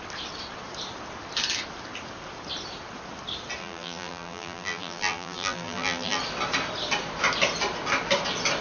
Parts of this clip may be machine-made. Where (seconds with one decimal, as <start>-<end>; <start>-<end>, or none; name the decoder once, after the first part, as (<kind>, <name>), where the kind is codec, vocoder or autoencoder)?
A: 3.6-6.2 (vocoder, BigVGAN v2)